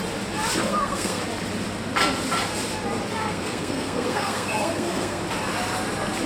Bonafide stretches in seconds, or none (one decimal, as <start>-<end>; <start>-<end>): 0.0-0.7; 1.2-3.2; 5.2-6.3